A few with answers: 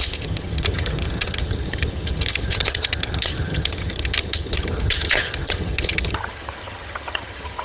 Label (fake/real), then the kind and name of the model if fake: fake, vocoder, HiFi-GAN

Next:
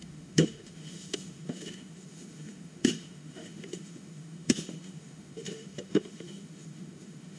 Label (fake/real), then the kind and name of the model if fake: fake, autoencoder, DAC-VAE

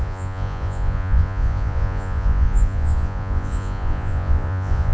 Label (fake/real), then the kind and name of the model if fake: fake, vocoder, Vocos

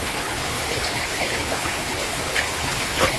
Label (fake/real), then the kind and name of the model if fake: fake, codec, HILCodec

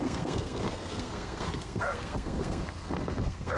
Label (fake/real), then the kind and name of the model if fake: fake, codec, SNAC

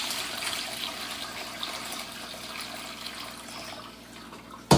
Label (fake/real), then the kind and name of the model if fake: real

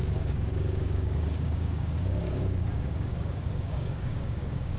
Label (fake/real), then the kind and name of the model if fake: fake, codec, DAC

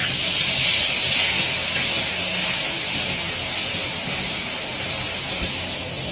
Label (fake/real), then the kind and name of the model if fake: real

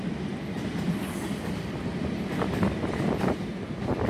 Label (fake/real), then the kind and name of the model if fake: real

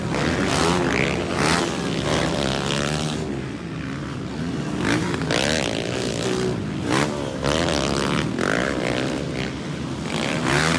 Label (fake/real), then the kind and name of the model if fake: real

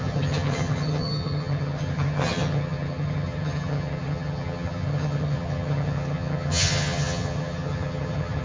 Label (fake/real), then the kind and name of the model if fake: fake, vocoder, HiFi-GAN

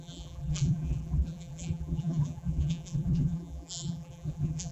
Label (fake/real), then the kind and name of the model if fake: fake, vocoder, BigVGAN v2